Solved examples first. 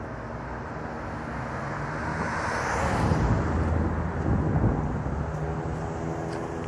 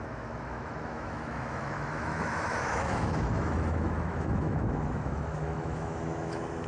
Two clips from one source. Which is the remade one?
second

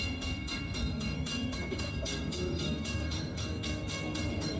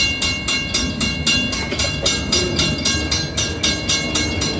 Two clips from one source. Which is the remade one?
first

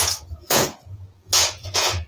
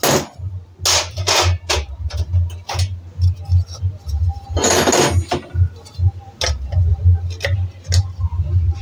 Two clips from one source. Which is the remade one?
first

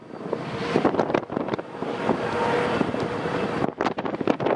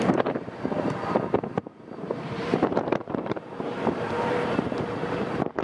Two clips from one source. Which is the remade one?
second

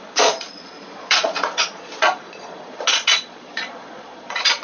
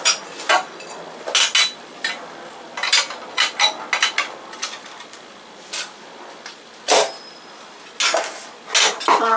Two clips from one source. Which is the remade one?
first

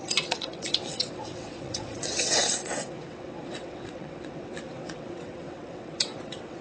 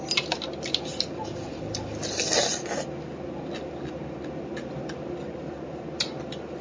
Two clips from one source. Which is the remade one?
first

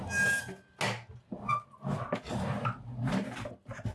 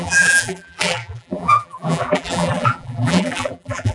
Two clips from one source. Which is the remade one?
second